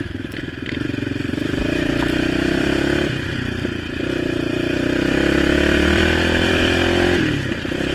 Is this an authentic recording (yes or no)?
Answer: no